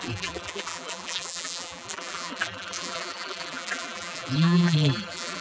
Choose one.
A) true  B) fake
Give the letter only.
B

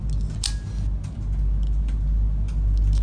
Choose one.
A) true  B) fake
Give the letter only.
A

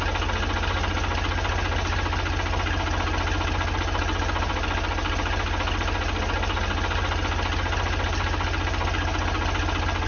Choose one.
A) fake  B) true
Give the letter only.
B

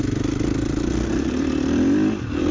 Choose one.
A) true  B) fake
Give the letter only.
A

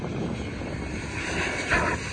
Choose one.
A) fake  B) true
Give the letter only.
B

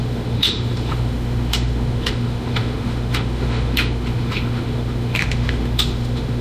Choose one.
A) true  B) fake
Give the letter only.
B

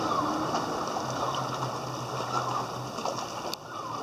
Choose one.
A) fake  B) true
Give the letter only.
B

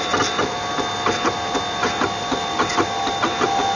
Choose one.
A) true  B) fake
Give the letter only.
A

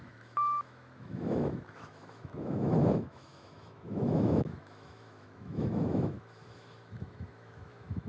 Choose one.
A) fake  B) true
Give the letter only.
A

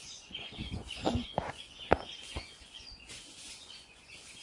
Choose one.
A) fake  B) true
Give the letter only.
A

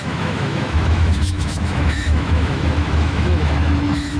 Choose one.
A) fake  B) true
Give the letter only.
A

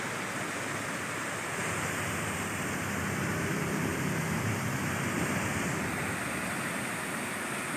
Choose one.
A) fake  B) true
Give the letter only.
B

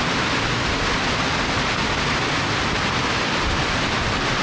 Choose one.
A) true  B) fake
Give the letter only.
A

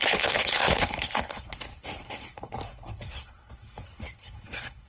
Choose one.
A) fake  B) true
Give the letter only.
A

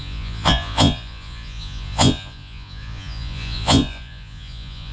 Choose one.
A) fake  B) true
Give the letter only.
A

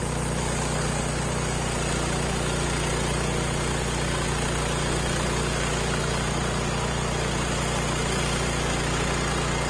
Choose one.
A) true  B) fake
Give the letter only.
A